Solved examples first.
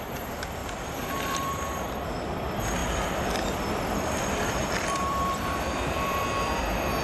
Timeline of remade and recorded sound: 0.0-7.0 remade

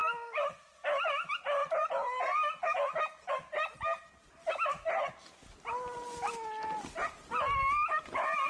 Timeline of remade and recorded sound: 0.0-8.5 recorded

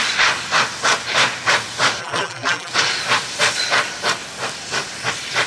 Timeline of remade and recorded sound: 0.0-2.0 recorded; 2.0-2.7 remade; 2.7-5.5 recorded

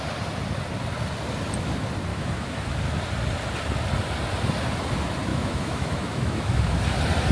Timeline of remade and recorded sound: 0.0-2.1 recorded; 2.1-2.7 remade; 2.7-5.3 recorded; 5.3-6.8 remade; 6.8-7.3 recorded

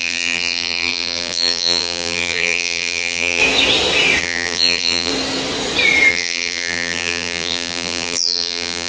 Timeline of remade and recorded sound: 0.0-3.4 remade; 3.4-4.2 recorded; 4.2-5.1 remade; 5.1-6.1 recorded; 6.1-8.9 remade

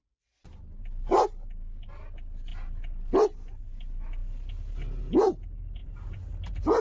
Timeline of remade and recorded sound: 0.0-5.8 recorded; 5.8-6.8 remade

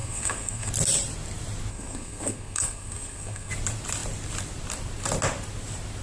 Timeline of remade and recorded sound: 0.0-0.7 remade; 0.7-1.7 recorded; 1.7-3.5 remade; 3.5-6.0 recorded

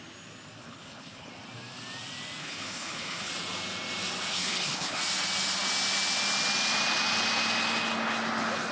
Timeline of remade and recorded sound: 0.0-0.6 recorded; 0.6-1.3 remade; 1.3-2.4 recorded; 2.4-3.3 remade; 3.3-4.3 recorded; 4.3-5.0 remade; 5.0-8.7 recorded